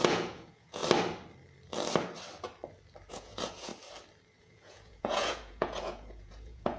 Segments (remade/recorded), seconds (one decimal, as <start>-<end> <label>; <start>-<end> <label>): 0.0-0.8 remade; 0.8-3.1 recorded; 3.1-3.7 remade; 3.7-4.4 recorded; 4.4-6.8 remade